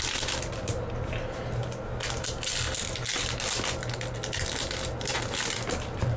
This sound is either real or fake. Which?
real